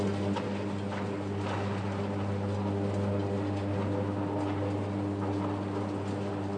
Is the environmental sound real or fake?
real